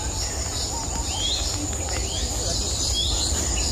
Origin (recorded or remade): recorded